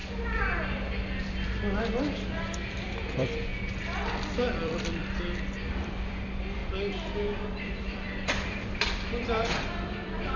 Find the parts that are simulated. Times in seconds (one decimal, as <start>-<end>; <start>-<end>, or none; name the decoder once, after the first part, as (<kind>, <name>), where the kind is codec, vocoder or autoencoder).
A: 2.4-3.5 (vocoder, BigVGAN v2); 4.1-5.0; 5.7-6.6; 7.4-10.4